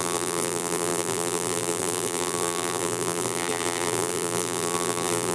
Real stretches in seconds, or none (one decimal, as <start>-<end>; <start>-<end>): none